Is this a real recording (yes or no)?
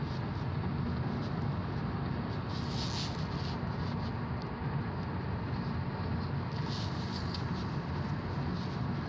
yes